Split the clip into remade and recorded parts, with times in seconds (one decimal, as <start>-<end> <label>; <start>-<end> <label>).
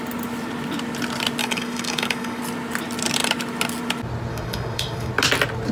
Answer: 0.0-1.4 recorded; 1.4-2.4 remade; 2.4-4.3 recorded; 4.3-5.1 remade; 5.1-5.7 recorded